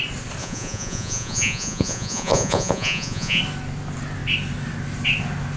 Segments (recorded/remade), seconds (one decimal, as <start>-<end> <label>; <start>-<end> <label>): 0.0-0.4 recorded; 0.4-3.4 remade; 3.4-5.6 recorded